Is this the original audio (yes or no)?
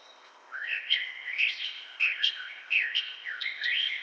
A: no